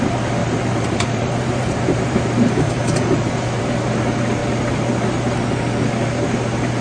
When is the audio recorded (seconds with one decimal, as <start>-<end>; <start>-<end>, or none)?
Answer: 0.0-0.4; 3.6-6.8